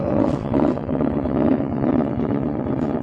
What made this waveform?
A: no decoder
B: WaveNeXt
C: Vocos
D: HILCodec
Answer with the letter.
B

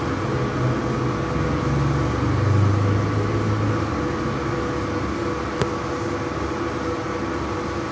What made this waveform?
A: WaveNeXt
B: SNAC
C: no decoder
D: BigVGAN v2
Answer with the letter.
C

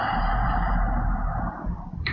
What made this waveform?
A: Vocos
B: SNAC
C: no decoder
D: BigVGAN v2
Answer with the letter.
D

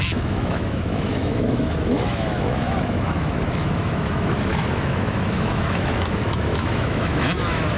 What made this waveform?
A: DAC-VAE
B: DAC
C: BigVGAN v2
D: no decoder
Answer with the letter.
A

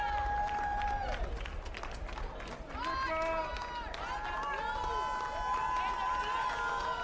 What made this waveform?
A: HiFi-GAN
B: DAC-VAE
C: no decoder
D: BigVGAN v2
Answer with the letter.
C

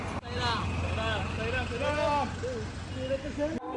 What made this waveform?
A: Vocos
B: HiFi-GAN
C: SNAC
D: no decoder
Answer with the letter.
D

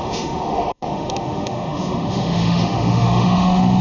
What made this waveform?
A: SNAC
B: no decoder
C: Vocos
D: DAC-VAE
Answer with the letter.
D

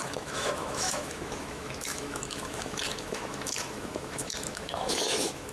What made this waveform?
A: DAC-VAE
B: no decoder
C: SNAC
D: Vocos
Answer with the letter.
A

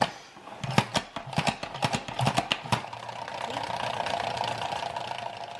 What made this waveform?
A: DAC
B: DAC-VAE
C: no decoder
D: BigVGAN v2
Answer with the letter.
C